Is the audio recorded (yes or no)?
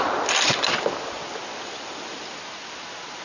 yes